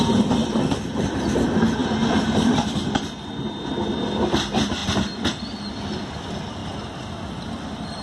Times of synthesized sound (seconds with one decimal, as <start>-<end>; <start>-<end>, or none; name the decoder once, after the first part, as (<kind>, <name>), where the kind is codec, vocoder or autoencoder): none